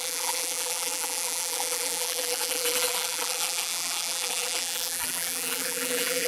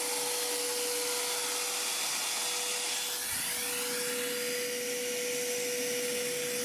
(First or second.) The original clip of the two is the second